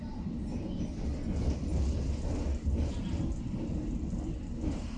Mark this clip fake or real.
real